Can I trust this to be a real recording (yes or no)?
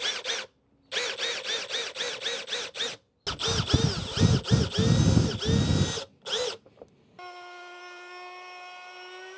yes